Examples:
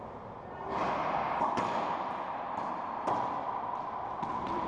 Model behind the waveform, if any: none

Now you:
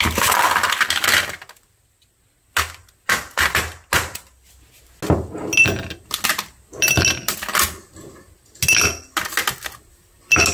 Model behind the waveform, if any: none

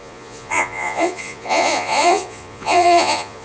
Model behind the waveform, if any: vocoder, Vocos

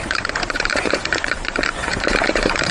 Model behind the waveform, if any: vocoder, Vocos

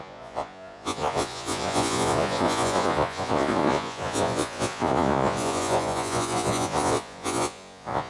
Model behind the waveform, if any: vocoder, Vocos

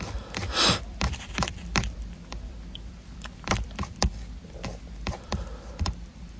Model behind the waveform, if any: vocoder, BigVGAN v2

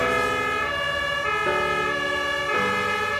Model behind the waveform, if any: none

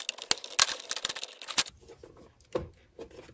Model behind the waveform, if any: none